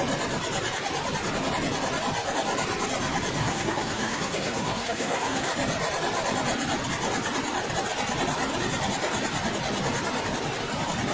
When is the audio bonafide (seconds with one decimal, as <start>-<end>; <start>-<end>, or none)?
0.0-3.4; 5.5-11.1